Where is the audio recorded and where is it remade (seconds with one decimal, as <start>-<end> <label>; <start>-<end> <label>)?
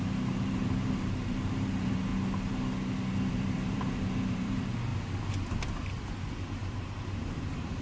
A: 0.0-2.1 remade; 2.1-3.3 recorded; 3.3-4.9 remade; 4.9-6.7 recorded; 6.7-7.8 remade